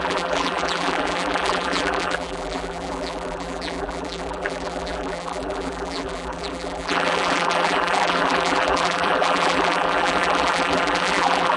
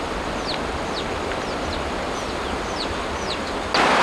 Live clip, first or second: second